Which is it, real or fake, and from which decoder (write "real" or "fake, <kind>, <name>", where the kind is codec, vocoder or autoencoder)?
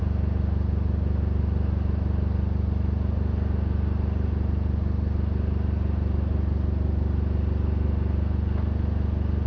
real